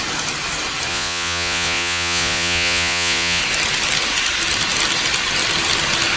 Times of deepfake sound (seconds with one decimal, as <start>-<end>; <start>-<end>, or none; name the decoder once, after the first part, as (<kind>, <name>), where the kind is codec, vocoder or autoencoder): 0.9-3.4 (vocoder, Vocos)